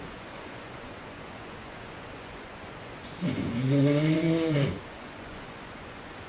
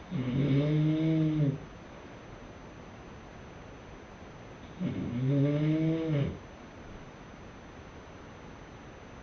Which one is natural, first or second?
second